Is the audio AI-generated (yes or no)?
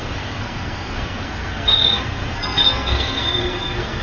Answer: yes